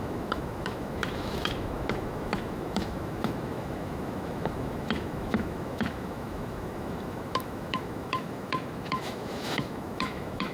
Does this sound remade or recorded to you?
remade